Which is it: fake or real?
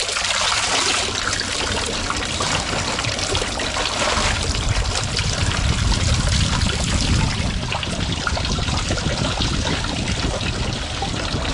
fake